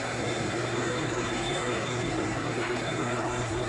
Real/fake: fake